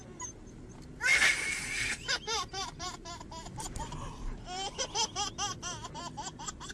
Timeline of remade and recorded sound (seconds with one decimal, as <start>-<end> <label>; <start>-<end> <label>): 0.0-1.1 recorded; 1.1-4.8 remade; 4.8-6.7 recorded